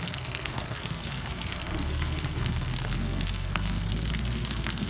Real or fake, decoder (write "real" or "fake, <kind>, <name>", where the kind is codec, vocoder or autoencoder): fake, codec, SNAC